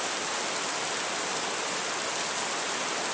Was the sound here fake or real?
real